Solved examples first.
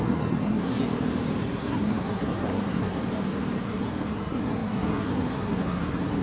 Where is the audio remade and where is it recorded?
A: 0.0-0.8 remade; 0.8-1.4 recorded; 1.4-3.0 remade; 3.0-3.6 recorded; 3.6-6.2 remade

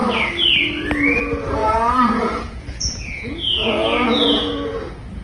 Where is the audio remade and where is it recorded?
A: 0.0-1.6 recorded; 1.6-4.7 remade; 4.7-5.2 recorded